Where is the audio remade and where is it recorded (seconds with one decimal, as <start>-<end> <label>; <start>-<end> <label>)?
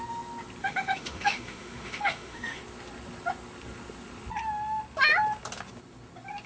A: 0.0-0.6 recorded; 0.6-2.6 remade; 2.6-6.5 recorded